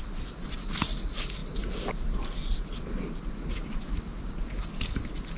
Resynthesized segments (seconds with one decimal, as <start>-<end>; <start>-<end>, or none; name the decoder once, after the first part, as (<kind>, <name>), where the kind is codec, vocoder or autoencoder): none